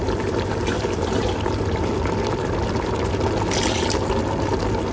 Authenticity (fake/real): real